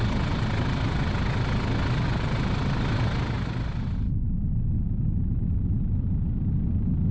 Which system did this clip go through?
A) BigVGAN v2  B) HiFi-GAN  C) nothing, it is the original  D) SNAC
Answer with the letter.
C